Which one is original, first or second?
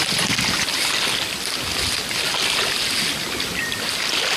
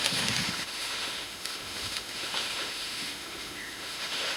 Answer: first